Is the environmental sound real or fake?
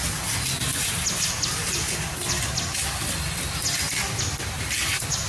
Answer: real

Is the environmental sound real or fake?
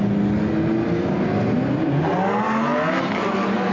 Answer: real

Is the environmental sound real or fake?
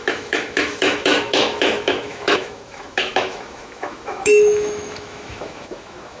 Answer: fake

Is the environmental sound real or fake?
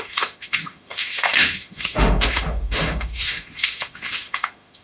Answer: fake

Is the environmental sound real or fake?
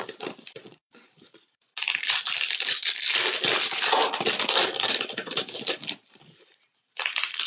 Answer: real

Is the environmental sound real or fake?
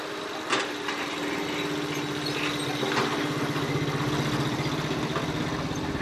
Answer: real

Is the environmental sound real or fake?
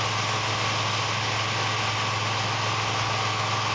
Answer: real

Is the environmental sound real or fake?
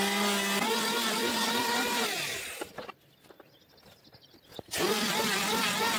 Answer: real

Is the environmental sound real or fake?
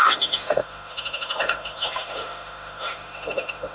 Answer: fake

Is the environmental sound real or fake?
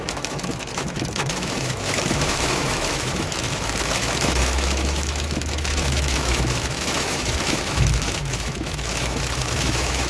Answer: fake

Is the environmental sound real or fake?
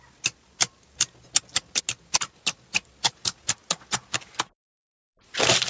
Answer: real